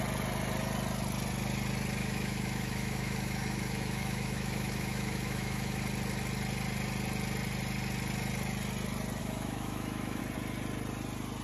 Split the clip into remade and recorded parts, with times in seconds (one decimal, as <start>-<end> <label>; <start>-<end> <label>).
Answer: 0.0-2.0 recorded; 2.0-5.8 remade; 5.8-9.2 recorded; 9.2-10.2 remade; 10.2-11.4 recorded